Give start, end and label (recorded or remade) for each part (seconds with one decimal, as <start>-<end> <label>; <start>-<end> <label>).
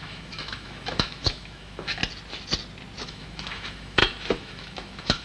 0.0-2.0 remade; 2.0-3.0 recorded; 3.0-5.2 remade